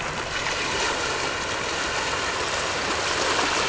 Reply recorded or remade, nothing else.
recorded